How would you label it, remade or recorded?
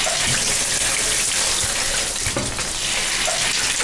recorded